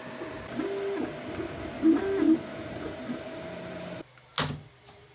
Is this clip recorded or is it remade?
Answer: recorded